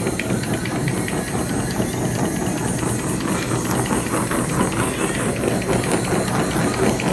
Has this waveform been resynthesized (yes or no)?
no